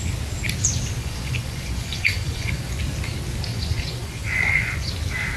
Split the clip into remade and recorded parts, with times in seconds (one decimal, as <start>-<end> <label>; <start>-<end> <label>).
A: 0.0-1.0 recorded; 1.0-2.8 remade; 2.8-3.5 recorded; 3.5-4.9 remade; 4.9-5.4 recorded